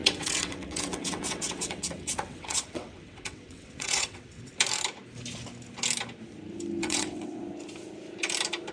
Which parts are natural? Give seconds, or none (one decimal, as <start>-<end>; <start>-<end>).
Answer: 4.5-6.8; 7.4-8.7